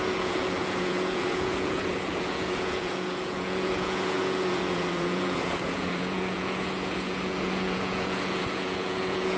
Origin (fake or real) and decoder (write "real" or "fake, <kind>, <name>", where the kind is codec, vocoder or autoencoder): fake, vocoder, Vocos